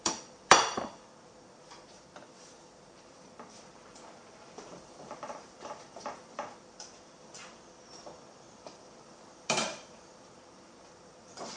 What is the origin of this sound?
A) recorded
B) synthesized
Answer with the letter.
B